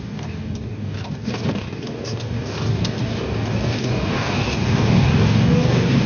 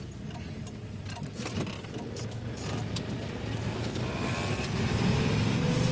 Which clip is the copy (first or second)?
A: first